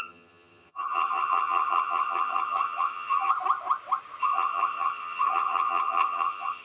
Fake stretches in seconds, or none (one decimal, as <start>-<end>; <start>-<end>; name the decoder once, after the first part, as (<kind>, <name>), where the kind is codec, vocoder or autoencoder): 0.0-3.3 (vocoder, HiFi-GAN); 4.2-6.6